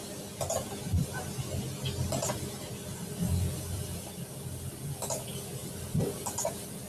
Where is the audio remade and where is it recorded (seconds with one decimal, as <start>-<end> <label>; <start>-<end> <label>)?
0.0-2.0 recorded; 2.0-4.8 remade; 4.8-5.6 recorded; 5.6-6.4 remade; 6.4-6.9 recorded